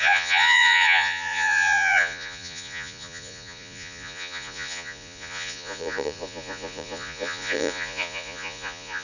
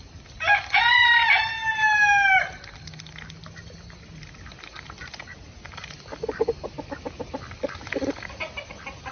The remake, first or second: first